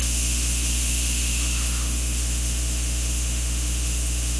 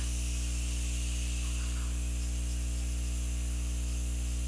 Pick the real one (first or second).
second